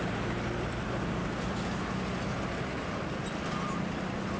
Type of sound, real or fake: real